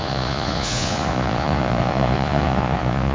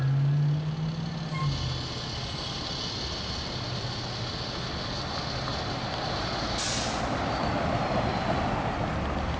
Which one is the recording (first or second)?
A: second